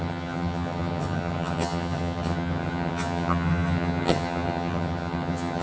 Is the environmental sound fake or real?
fake